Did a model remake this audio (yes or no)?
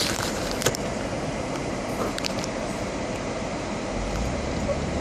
yes